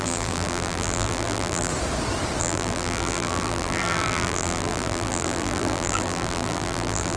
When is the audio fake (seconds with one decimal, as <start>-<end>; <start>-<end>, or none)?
0.0-1.7; 2.4-7.2